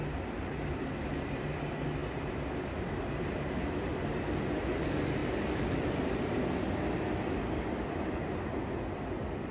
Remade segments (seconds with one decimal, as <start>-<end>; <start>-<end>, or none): none